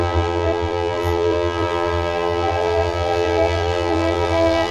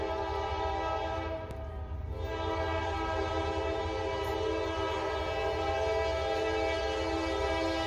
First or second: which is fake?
first